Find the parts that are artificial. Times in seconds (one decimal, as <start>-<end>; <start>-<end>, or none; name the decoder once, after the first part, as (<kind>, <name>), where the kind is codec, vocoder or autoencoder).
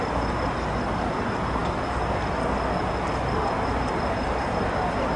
none